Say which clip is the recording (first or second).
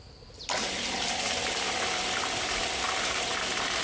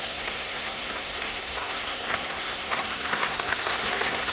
first